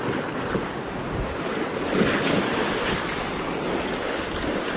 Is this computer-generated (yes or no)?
no